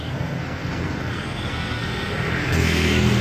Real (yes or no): no